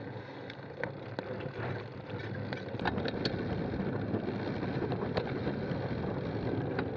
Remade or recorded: recorded